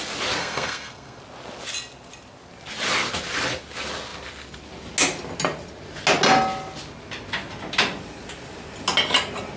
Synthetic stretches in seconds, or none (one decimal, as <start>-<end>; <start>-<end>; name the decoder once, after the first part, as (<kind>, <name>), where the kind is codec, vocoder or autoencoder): 0.4-1.2 (codec, SNAC)